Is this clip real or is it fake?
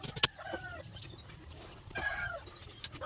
real